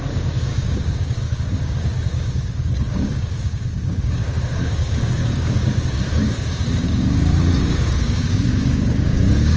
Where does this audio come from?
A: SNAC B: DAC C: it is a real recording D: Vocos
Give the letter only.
B